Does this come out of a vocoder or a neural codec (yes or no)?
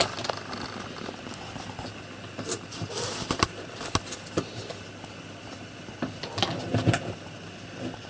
no